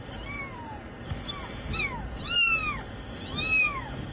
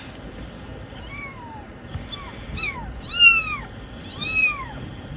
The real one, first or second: first